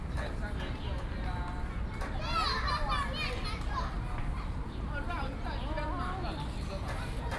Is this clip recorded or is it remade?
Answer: recorded